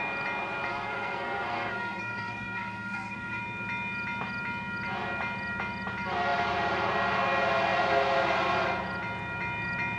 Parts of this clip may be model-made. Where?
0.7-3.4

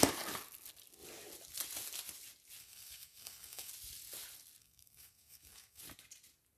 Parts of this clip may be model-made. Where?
2.6-3.7; 4.6-5.8